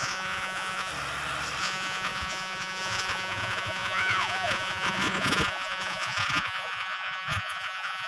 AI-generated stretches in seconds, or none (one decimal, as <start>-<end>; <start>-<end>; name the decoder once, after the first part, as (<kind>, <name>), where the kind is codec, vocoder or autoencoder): 0.0-0.9 (vocoder, Vocos); 1.6-8.1